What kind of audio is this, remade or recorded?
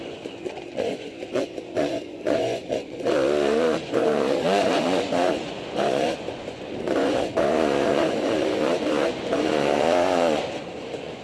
remade